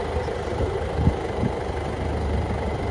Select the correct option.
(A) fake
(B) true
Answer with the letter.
B